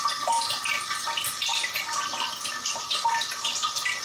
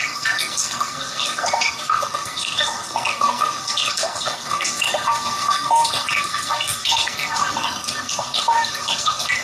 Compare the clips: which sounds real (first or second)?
first